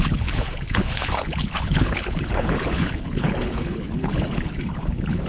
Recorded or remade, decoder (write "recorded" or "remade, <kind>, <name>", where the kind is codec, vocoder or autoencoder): remade, codec, HILCodec